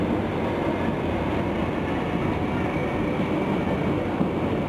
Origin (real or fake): real